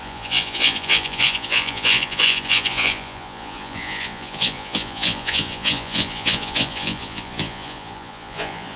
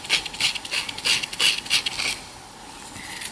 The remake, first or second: first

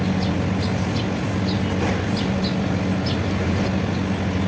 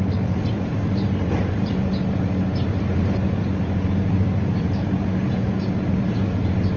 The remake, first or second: second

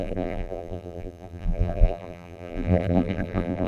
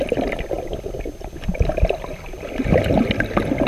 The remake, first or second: first